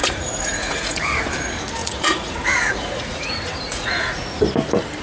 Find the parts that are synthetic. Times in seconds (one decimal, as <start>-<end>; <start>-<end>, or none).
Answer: 0.0-1.2; 1.8-4.4